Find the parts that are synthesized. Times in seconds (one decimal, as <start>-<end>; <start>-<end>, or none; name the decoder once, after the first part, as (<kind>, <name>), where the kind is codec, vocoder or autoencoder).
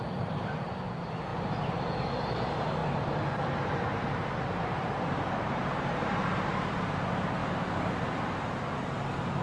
0.0-9.4 (vocoder, BigVGAN v2)